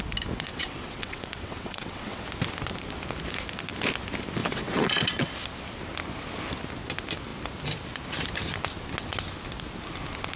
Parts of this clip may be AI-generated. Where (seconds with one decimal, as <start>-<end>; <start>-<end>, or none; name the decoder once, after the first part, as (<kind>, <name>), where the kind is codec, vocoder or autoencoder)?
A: 0.5-2.2 (vocoder, WaveNeXt); 4.4-5.3